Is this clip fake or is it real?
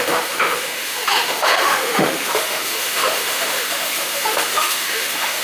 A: fake